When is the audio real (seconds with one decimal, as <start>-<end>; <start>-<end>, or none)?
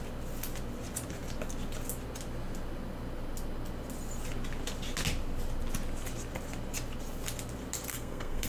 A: 0.0-7.9